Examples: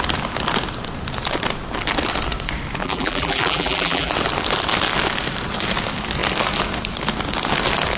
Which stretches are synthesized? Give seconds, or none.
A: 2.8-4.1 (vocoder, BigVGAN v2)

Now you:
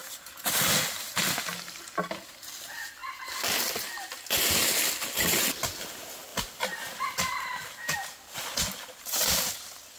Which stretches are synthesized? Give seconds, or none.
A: 0.0-0.8 (vocoder, BigVGAN v2)

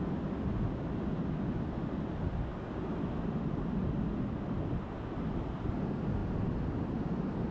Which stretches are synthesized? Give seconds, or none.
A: 6.2-7.0 (vocoder, BigVGAN v2)